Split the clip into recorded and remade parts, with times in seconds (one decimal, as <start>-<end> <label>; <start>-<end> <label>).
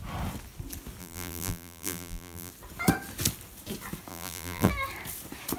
0.0-1.0 recorded; 1.0-2.5 remade; 2.5-4.1 recorded; 4.1-4.7 remade; 4.7-5.6 recorded